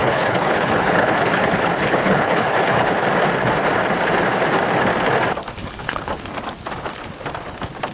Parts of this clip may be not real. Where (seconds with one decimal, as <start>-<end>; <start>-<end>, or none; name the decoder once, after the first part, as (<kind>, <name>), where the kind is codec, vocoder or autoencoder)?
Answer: 0.0-2.9 (codec, HILCodec); 5.6-6.1